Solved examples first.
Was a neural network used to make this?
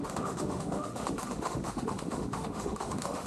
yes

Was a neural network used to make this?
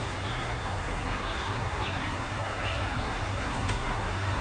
yes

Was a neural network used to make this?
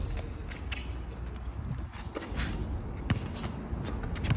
no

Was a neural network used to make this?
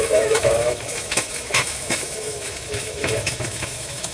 yes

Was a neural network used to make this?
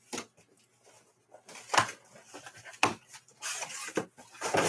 no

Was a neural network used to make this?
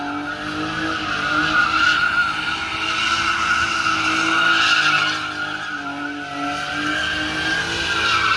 no